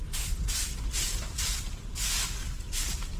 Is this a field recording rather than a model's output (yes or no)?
no